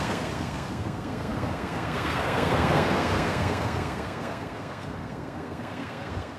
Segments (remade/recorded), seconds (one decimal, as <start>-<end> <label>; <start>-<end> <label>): 0.0-6.4 remade